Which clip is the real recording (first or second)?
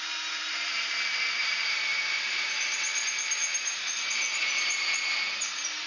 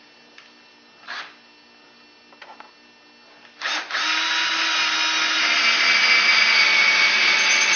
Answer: second